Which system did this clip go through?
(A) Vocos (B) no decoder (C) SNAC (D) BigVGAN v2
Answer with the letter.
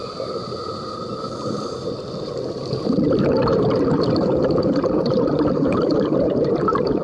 D